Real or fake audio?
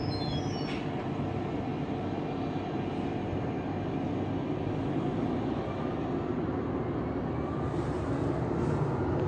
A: real